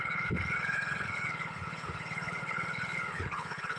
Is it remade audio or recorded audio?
remade